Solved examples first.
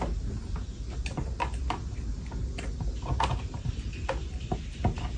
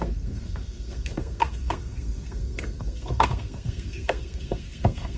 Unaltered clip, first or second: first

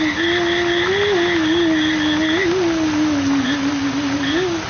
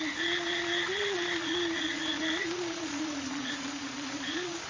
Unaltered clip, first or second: first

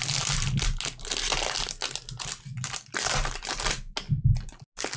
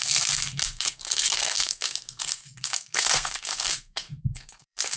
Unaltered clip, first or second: first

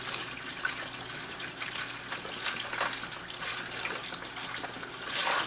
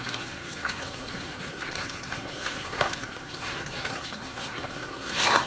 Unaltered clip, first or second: first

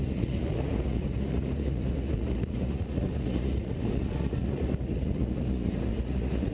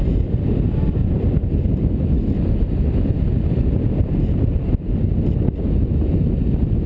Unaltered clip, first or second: second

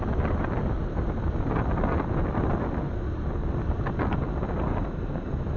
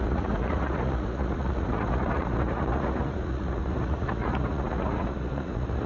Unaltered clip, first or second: first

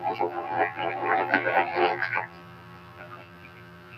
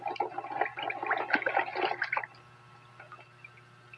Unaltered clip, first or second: second